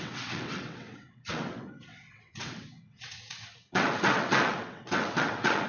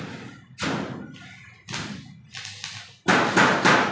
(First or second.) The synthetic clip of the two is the first